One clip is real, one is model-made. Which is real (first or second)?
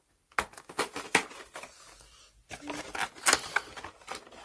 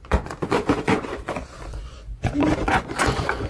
first